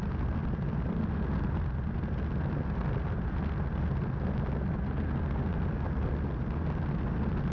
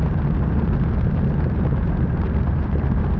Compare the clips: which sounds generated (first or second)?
second